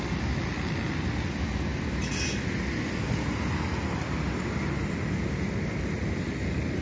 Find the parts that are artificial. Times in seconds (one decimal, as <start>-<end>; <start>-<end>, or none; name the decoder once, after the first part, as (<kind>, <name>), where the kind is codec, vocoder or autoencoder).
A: none